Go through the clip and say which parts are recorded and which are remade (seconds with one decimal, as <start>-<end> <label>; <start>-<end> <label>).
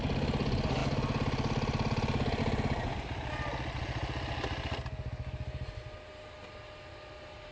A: 0.0-7.5 recorded